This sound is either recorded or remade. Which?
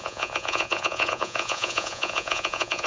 remade